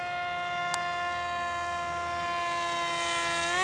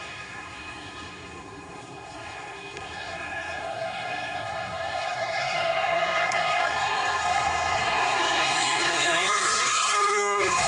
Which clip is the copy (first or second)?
second